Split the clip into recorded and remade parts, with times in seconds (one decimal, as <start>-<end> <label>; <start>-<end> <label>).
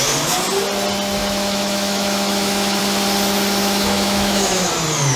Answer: 0.0-1.2 recorded; 1.2-2.8 remade; 2.8-3.6 recorded; 3.6-4.7 remade; 4.7-5.2 recorded